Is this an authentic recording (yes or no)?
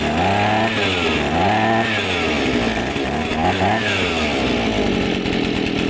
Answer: yes